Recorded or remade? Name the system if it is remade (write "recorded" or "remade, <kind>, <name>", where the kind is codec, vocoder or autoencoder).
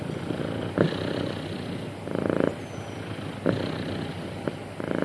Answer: recorded